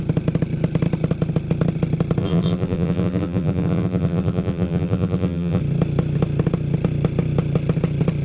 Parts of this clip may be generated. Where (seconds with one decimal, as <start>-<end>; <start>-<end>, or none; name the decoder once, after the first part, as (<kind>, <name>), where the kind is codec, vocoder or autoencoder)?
2.2-5.6 (vocoder, BigVGAN v2)